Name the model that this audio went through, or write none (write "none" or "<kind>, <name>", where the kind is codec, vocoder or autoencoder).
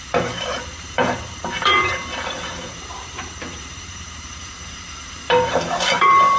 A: vocoder, BigVGAN v2